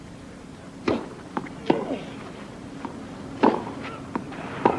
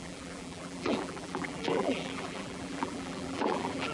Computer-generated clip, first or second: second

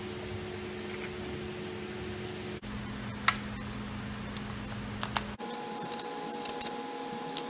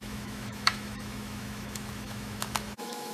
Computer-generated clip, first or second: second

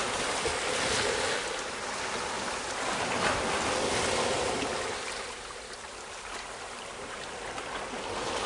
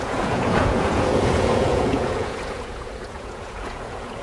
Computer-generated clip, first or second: second